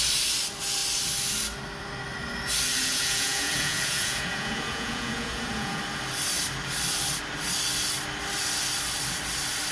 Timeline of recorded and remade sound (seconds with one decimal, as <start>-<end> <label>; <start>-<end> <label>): 0.0-2.8 recorded; 2.8-5.8 remade; 5.8-9.7 recorded